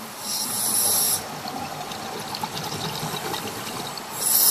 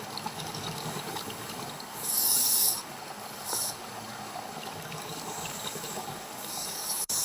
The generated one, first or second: second